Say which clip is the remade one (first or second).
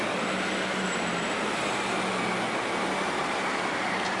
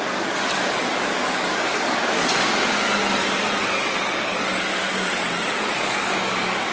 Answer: second